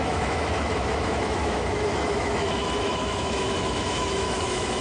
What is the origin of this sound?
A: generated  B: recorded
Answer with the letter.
A